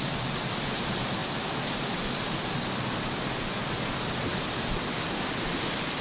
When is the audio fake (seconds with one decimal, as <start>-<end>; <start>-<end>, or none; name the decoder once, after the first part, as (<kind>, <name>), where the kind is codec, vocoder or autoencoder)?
none